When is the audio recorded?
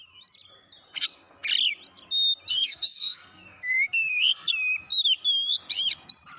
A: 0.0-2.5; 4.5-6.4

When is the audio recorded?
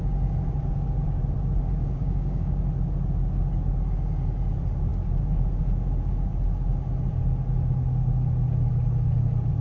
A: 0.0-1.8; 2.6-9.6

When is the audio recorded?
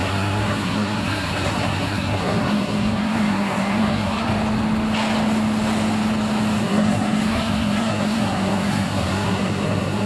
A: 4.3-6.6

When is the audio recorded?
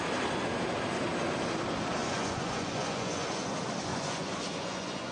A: 0.0-2.0; 3.5-3.9